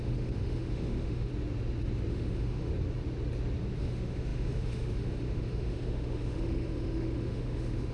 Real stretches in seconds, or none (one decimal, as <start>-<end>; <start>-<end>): 1.3-2.1; 2.7-3.8

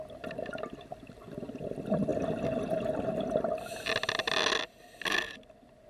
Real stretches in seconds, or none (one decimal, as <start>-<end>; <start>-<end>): 0.0-5.9

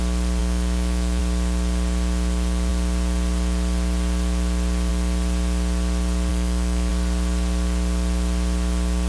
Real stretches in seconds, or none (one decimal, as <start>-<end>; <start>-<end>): 0.0-0.4; 1.2-6.3; 6.9-9.1

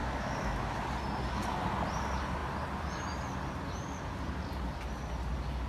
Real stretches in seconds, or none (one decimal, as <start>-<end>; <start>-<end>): 0.8-5.7

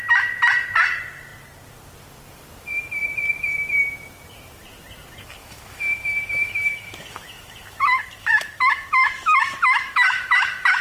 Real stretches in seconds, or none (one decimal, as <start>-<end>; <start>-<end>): 0.0-5.4

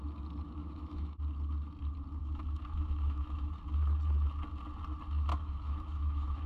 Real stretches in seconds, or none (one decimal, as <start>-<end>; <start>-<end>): 0.0-0.6; 1.2-2.2; 3.5-5.3

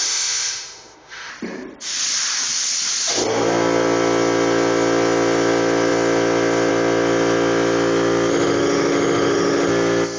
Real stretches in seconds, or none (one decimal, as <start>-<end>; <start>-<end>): 1.3-8.3; 9.7-10.2

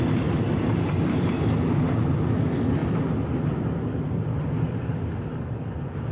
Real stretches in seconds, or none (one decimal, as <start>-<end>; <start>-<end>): 0.0-6.1